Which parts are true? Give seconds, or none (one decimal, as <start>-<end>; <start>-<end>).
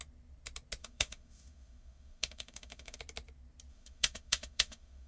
0.0-0.8; 3.0-3.7